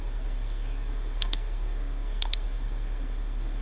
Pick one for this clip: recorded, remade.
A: remade